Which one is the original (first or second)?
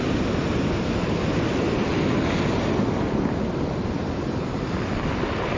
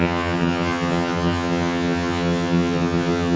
first